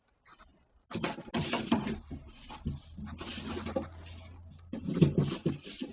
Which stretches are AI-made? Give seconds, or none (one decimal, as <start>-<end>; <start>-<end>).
none